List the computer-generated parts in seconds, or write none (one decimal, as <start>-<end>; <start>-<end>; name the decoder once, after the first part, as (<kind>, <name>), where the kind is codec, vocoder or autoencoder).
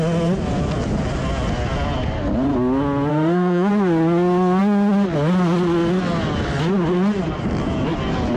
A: 3.1-3.7 (autoencoder, DAC-VAE)